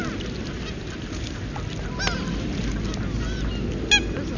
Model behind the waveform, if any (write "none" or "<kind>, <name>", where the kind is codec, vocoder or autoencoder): none